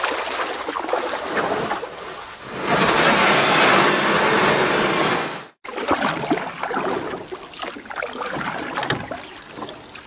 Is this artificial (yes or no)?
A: no